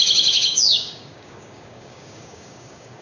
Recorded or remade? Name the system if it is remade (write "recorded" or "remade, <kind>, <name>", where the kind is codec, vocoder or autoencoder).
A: remade, codec, DAC